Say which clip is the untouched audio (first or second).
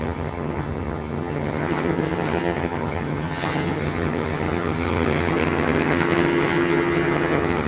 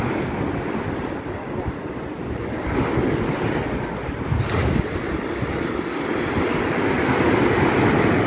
second